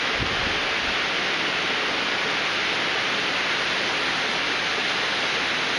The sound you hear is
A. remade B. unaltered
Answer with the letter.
B